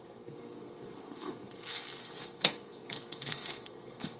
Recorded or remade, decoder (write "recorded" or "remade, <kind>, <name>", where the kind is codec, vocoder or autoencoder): remade, codec, SNAC